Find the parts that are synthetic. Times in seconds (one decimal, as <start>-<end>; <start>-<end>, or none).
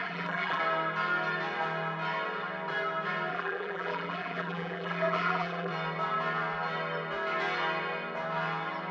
0.0-0.6; 3.3-5.7